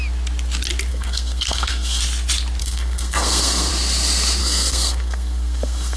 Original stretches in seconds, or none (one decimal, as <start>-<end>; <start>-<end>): 0.0-0.9; 2.0-2.6; 3.7-4.4